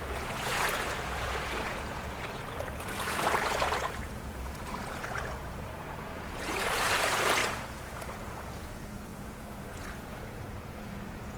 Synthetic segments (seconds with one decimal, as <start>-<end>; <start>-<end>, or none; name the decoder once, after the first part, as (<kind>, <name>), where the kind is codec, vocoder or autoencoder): 0.0-11.4 (vocoder, Vocos)